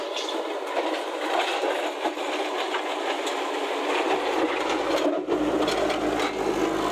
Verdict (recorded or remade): recorded